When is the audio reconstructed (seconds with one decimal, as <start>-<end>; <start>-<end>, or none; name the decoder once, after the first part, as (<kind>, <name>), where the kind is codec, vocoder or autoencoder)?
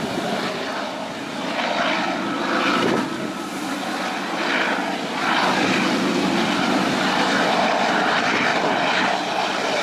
8.5-9.0 (vocoder, BigVGAN v2)